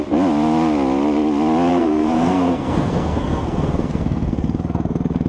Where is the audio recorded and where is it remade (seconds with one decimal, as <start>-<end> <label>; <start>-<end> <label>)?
0.0-1.7 recorded; 1.7-5.3 remade